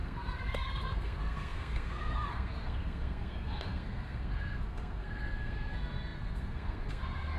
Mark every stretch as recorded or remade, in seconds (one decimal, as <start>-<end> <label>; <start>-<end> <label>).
0.0-7.4 remade